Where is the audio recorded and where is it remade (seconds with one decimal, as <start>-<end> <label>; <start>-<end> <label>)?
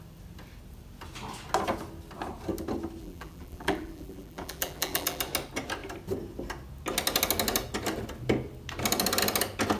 0.0-3.0 recorded; 3.0-5.2 remade; 5.2-9.8 recorded